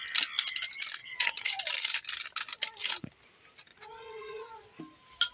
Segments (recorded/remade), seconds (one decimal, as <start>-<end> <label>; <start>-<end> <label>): 0.0-1.0 recorded; 1.0-1.6 remade; 1.6-3.7 recorded; 3.7-4.8 remade; 4.8-5.3 recorded